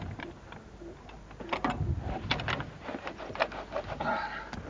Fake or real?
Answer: real